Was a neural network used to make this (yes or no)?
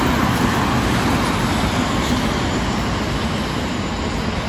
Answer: no